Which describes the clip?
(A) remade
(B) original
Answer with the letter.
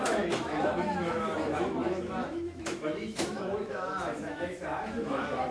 A